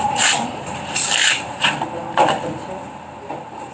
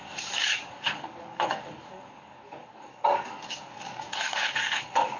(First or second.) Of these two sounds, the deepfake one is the second